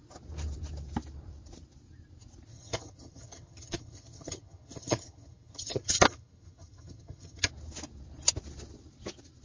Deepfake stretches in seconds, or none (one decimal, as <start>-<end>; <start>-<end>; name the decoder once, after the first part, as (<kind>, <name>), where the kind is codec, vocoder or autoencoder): 2.5-7.5 (vocoder, HiFi-GAN)